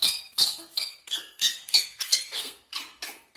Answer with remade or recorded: remade